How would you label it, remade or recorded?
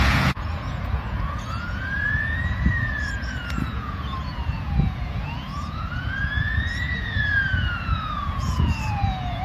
remade